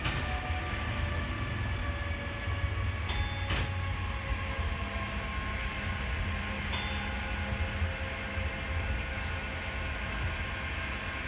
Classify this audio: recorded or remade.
recorded